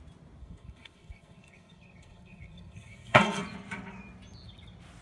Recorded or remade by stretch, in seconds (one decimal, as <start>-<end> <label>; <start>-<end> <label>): 0.0-0.4 recorded; 0.4-3.4 remade; 3.4-5.0 recorded